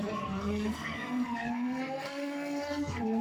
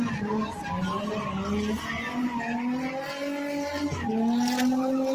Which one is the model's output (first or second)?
first